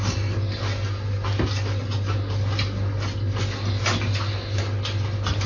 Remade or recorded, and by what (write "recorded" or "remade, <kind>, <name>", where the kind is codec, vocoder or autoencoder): recorded